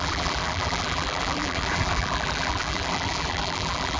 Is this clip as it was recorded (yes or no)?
no